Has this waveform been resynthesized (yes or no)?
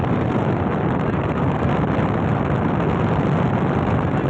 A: no